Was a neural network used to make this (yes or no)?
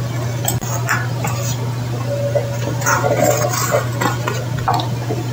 no